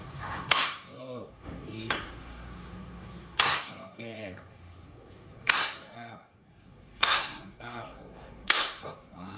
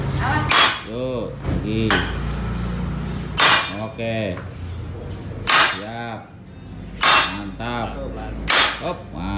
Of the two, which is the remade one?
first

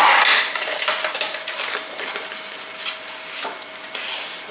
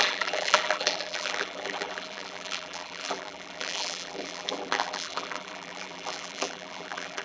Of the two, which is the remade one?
second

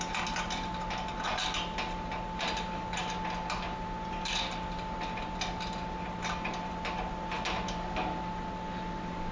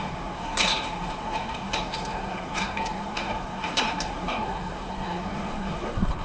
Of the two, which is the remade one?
second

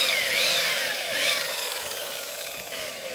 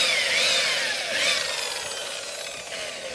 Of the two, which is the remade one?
first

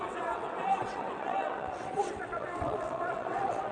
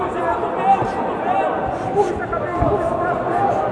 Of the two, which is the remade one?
first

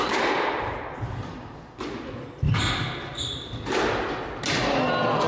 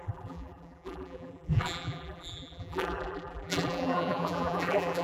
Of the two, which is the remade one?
second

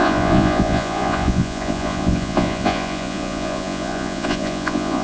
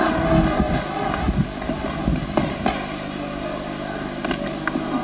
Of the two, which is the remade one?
first